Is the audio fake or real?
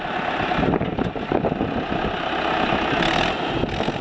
real